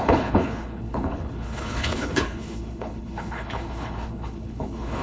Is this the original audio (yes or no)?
no